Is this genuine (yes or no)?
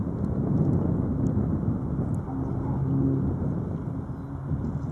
yes